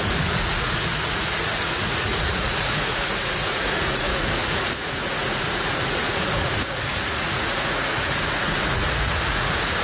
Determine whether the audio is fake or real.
fake